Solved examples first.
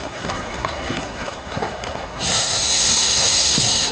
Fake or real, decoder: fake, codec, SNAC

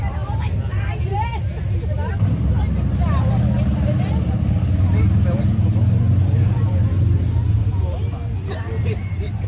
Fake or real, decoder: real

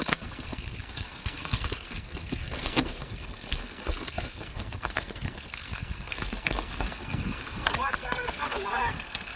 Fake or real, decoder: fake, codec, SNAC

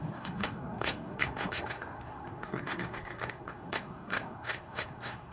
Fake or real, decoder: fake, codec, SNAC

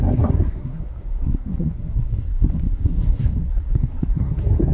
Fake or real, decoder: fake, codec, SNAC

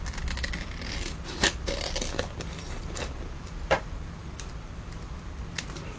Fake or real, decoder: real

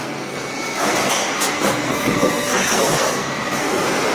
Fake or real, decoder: fake, codec, SNAC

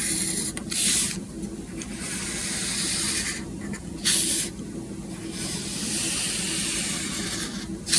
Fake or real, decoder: real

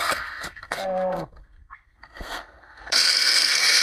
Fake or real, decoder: fake, codec, SNAC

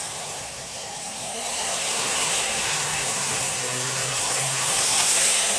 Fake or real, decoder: fake, codec, SNAC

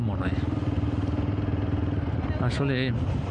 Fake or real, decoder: real